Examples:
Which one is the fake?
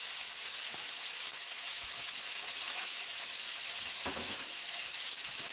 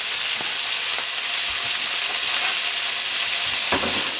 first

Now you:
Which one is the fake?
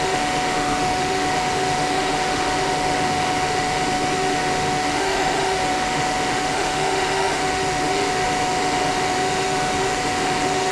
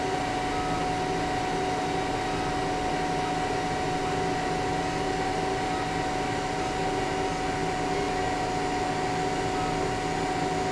first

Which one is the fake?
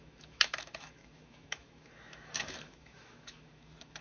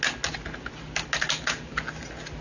first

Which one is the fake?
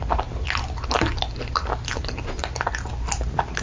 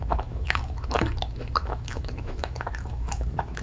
second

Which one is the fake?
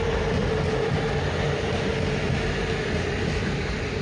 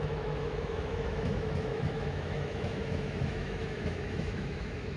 second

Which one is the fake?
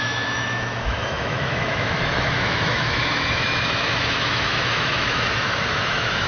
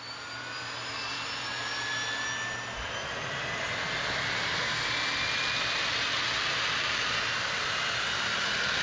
first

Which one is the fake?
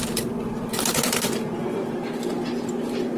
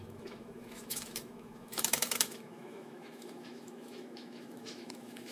second